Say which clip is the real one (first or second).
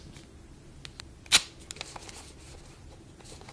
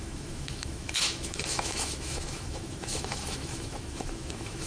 first